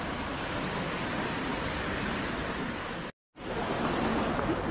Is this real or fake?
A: real